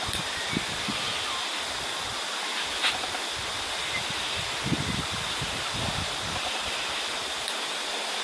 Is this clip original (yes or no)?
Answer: no